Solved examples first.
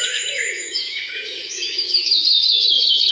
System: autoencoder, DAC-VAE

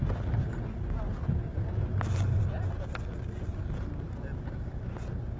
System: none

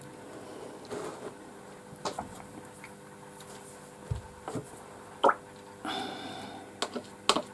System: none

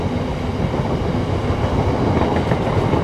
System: none